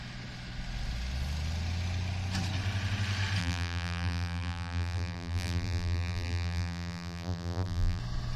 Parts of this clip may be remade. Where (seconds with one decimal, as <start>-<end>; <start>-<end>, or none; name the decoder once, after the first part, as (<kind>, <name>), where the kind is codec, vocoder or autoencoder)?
3.4-8.0 (vocoder, BigVGAN v2)